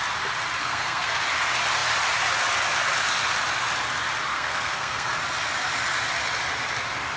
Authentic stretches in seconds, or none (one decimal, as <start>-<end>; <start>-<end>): 0.0-0.6; 1.2-4.3; 5.1-7.2